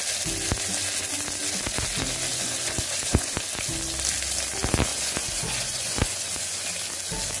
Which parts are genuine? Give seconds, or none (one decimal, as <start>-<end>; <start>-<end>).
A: 0.0-2.3; 3.4-4.9; 6.6-7.4